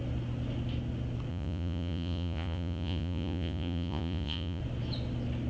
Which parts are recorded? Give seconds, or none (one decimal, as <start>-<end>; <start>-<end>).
0.0-1.3; 4.6-5.5